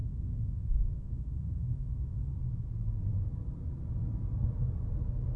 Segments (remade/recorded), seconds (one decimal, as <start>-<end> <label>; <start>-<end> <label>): 0.0-2.2 remade; 2.2-5.4 recorded